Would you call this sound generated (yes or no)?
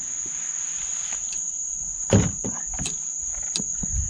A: no